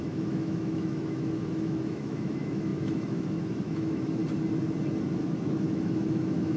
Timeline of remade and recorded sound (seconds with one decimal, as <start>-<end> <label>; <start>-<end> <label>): 0.0-4.2 remade; 4.2-5.2 recorded; 5.2-6.6 remade